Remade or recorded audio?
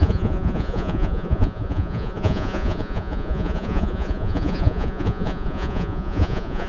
remade